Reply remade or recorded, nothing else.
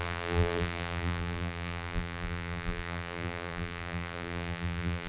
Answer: remade